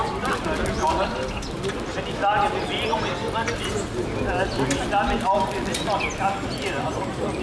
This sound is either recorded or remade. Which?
recorded